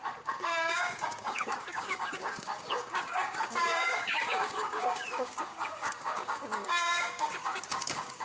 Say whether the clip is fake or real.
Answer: fake